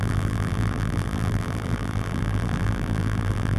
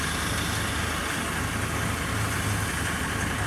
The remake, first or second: first